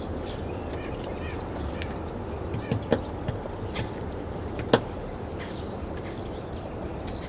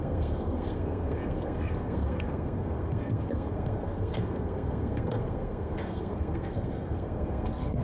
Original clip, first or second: first